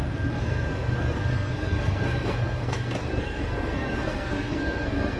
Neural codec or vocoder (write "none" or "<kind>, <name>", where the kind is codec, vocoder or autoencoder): codec, SNAC